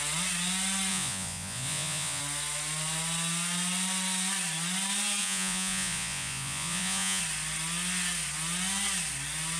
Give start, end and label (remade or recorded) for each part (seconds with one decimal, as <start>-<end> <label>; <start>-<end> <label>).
0.0-0.9 recorded; 0.9-2.2 remade; 2.2-5.2 recorded; 5.2-7.2 remade; 7.2-9.6 recorded